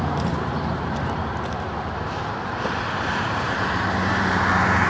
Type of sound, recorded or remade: remade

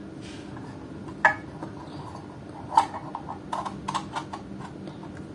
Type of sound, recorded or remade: recorded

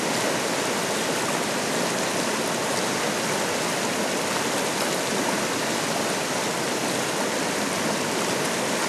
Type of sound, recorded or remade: recorded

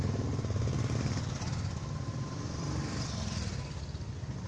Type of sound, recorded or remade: recorded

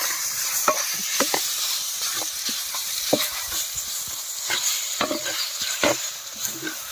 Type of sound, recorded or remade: remade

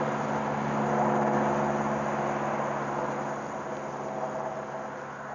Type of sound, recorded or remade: recorded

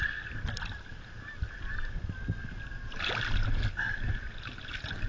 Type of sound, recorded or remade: recorded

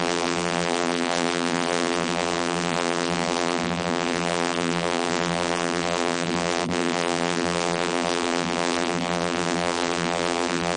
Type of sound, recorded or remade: remade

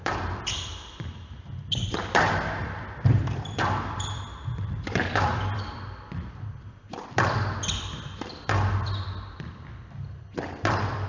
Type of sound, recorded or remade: remade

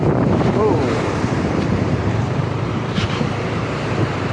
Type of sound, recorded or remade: remade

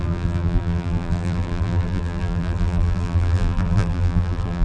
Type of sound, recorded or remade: remade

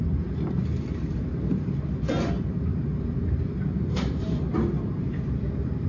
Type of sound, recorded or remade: remade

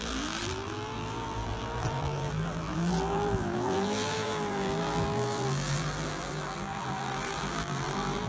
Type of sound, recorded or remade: remade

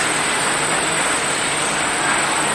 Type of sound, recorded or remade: recorded